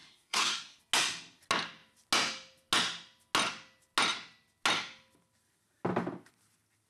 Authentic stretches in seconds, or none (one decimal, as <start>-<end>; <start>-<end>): 0.8-6.9